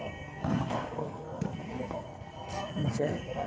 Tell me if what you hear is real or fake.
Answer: fake